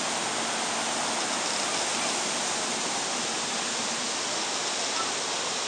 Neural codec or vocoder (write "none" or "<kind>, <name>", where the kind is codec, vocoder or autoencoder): none